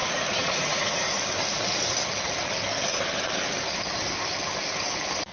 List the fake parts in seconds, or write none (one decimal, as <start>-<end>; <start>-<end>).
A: 0.0-1.0